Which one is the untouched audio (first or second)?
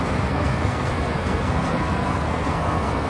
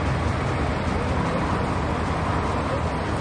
second